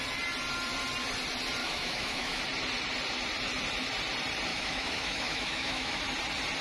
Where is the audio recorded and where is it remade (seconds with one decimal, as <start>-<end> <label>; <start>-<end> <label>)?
0.0-1.6 recorded; 1.6-2.4 remade; 2.4-4.5 recorded; 4.5-6.0 remade; 6.0-6.6 recorded